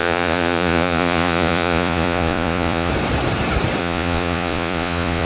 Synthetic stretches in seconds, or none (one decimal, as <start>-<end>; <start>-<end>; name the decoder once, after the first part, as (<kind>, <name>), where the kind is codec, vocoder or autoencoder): 0.0-2.9 (vocoder, Vocos); 3.8-5.3